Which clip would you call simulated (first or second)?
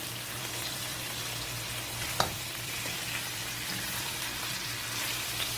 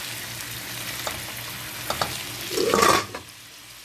first